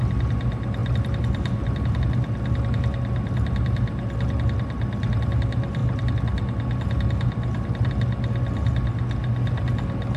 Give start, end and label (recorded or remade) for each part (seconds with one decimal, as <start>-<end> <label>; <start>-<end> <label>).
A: 0.0-10.2 recorded